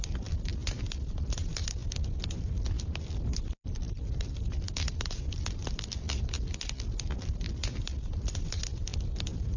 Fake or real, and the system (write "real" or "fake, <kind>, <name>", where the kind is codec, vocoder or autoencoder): real